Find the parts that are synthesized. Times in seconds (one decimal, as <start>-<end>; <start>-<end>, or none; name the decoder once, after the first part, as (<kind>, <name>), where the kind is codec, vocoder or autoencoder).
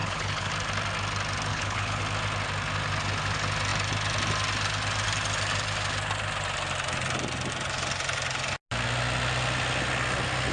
0.0-0.5 (codec, HILCodec); 1.5-2.0